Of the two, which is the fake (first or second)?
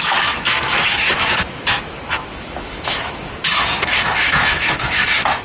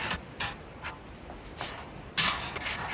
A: first